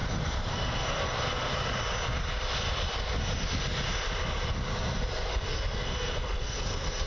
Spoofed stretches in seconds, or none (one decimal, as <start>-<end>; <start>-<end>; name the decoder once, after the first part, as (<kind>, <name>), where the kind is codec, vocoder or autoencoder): 0.5-1.5 (codec, SNAC); 5.3-7.1

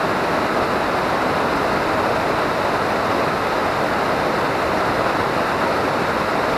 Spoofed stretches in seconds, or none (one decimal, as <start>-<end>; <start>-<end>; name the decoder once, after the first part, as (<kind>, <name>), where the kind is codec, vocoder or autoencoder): none

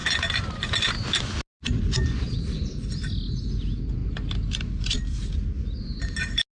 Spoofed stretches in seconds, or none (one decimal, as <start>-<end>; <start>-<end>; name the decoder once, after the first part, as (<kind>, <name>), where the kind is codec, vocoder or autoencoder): none

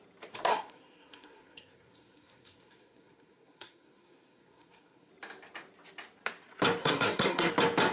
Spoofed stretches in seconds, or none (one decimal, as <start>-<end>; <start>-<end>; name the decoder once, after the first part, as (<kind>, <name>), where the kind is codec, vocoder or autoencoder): 0.5-5.1 (codec, SNAC); 6.8-7.5

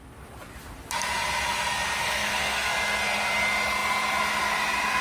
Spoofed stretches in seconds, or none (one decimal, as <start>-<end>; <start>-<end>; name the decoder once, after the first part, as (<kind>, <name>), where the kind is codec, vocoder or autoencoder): 2.0-2.7 (codec, SNAC)